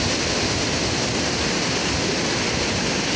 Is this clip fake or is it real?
real